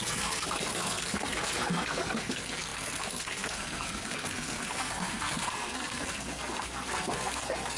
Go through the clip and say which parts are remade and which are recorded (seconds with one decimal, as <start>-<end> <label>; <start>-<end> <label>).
0.0-7.8 remade